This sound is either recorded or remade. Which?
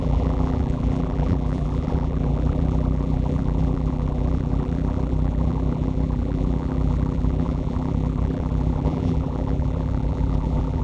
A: remade